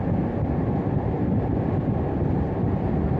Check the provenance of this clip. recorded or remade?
recorded